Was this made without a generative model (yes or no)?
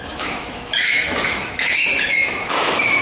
no